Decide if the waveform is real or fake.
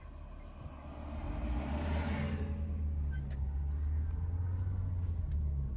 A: real